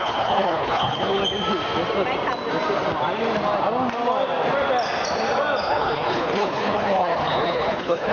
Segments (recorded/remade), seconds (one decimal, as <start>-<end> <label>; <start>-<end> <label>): 0.0-1.2 remade; 1.2-5.6 recorded; 5.6-8.1 remade